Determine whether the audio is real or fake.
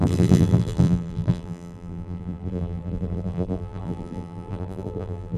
fake